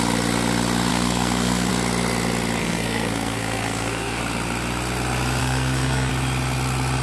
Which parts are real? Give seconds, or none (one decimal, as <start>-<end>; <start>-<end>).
0.0-0.9; 1.7-2.6; 4.2-5.4; 6.1-7.0